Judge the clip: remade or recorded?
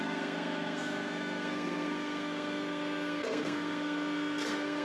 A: remade